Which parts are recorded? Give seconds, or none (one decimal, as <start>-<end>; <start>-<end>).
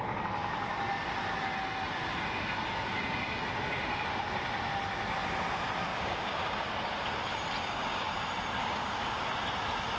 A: 0.0-5.9; 6.7-7.6; 8.1-8.6; 9.3-10.0